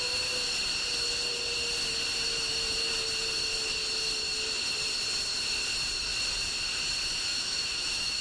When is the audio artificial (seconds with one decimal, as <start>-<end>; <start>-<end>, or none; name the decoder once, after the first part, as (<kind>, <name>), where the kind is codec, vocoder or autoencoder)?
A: 7.3-8.2 (autoencoder, DAC-VAE)